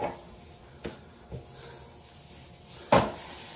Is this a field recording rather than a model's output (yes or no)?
yes